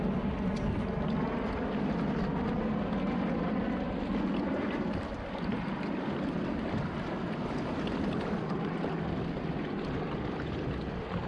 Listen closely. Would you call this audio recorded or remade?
recorded